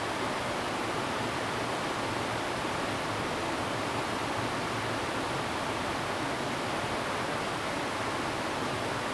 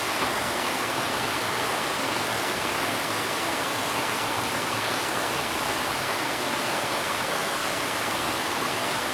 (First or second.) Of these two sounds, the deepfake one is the second